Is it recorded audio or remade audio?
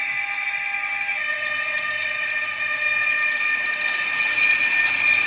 recorded